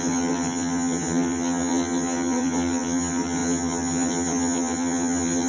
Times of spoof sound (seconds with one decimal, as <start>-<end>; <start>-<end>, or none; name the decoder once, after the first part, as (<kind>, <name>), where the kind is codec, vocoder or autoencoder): 0.0-5.5 (vocoder, HiFi-GAN)